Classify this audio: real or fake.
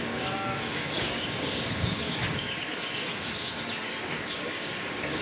fake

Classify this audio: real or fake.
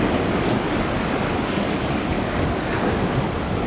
fake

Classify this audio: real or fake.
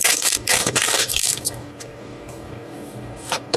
fake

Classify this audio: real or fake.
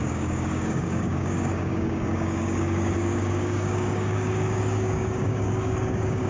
fake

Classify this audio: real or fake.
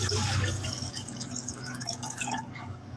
fake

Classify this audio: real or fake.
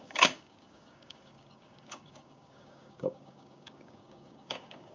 fake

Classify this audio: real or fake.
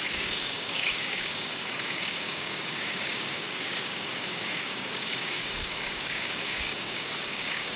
fake